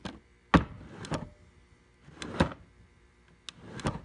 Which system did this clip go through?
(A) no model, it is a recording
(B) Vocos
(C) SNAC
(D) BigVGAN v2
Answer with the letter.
A